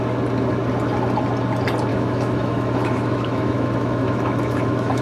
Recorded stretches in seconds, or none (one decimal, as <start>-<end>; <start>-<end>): 0.0-1.9

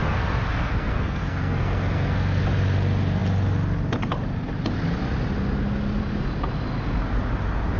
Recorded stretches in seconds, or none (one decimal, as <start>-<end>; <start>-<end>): 2.4-7.8

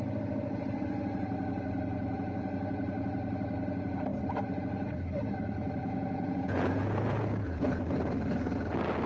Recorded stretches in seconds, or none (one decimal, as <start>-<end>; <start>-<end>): 0.0-5.8; 7.8-9.1

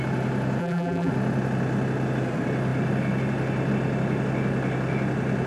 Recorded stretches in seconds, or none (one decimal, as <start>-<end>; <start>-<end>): 0.0-0.6; 1.1-5.5

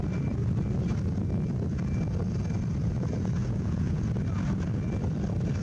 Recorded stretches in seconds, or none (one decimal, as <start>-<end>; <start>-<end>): 0.0-3.4; 4.0-5.6

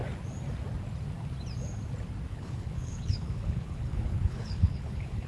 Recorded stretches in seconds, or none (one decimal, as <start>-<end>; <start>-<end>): 0.0-2.3

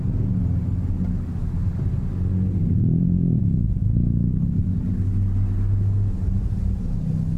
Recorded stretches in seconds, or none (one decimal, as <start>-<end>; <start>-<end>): 0.0-2.6; 3.4-7.4

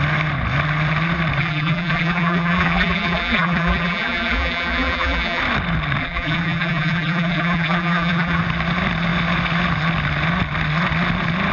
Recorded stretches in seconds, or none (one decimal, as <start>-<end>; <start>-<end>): 0.0-1.4; 5.4-6.0; 8.4-11.5